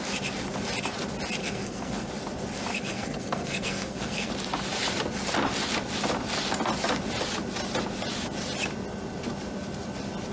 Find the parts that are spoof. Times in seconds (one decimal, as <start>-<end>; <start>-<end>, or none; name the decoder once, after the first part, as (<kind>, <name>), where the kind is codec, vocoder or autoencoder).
1.4-2.1 (codec, SNAC); 2.7-4.3